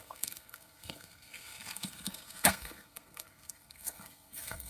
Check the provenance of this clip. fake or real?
fake